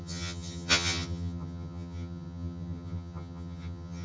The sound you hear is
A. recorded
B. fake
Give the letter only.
B